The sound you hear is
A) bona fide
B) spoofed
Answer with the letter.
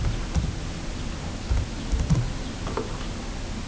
A